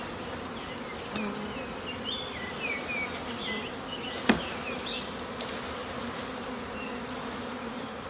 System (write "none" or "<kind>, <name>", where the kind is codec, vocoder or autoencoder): none